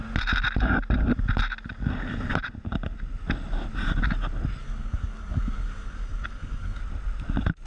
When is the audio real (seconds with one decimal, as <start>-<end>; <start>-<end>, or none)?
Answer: 0.0-4.6; 6.8-7.7